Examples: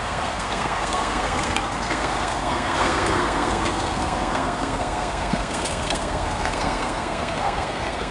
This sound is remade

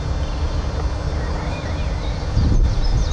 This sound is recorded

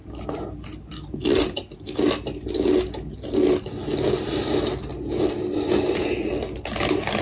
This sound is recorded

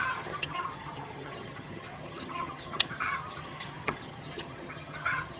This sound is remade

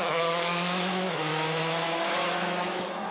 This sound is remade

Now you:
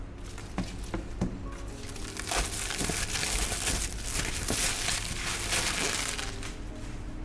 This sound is recorded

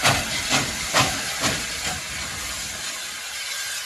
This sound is recorded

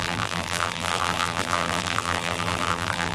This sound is remade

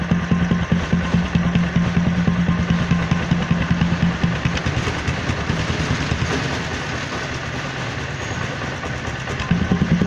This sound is recorded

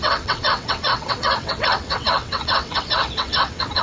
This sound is remade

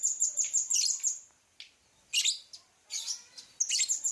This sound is recorded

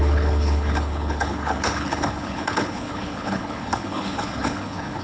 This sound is remade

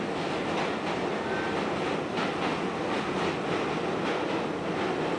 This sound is recorded